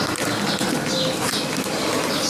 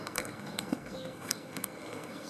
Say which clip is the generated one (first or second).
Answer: second